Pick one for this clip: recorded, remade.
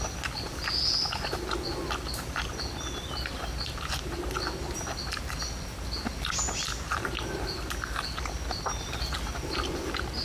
recorded